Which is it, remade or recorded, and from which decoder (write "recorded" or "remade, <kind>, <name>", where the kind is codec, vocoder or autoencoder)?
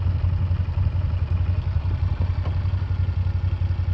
recorded